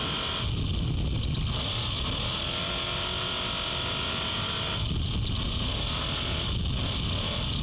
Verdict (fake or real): real